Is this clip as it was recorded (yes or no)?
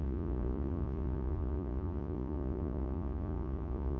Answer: no